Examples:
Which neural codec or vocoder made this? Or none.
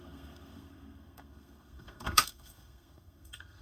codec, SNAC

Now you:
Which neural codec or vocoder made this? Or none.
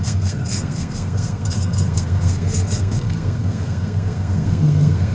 codec, SNAC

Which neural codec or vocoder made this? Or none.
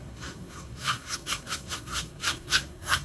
codec, SNAC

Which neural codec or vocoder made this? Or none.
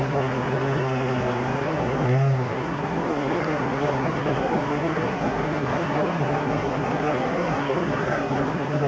codec, SNAC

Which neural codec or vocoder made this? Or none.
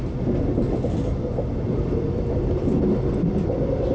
none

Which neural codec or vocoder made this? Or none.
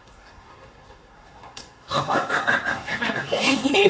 codec, SNAC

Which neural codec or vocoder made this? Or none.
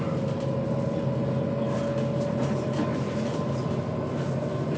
none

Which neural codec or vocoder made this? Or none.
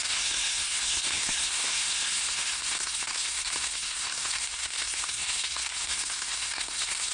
codec, SNAC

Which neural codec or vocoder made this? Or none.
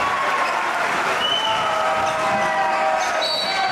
none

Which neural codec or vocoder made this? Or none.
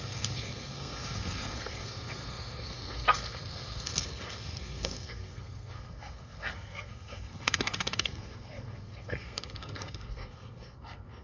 codec, SNAC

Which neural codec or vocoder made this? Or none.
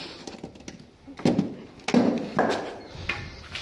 none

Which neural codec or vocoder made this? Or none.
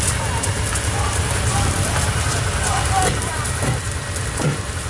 none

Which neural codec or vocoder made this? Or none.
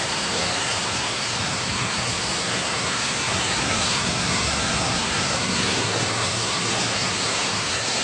codec, SNAC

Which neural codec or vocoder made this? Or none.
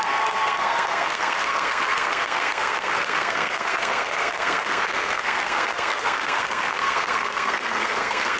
codec, SNAC